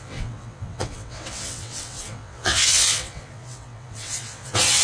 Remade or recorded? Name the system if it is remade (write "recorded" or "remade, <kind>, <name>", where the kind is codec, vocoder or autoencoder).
remade, vocoder, WaveNeXt